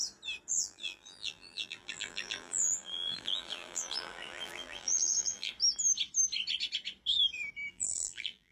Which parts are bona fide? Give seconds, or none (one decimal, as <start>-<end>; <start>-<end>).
0.0-0.5; 5.5-7.7

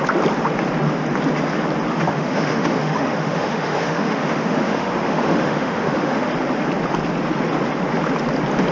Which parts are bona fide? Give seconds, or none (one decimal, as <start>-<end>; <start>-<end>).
0.0-1.9; 6.3-8.7

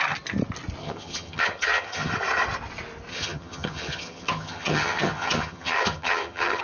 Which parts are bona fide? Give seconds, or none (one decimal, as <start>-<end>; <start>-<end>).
0.0-0.8; 2.1-3.1

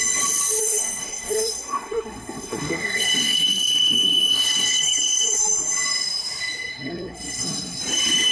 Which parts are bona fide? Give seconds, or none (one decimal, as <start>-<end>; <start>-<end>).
0.0-0.6; 5.4-6.7; 7.8-8.3

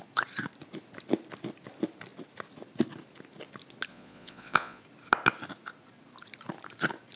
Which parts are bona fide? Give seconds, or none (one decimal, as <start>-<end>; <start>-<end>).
0.0-3.9; 4.8-7.2

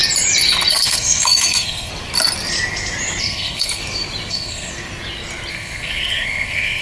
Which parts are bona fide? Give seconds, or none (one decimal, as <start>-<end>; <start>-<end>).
0.0-0.7; 1.9-3.2; 3.8-4.3; 4.7-5.5